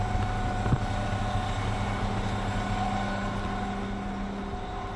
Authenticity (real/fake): real